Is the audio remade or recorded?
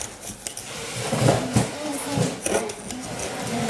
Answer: recorded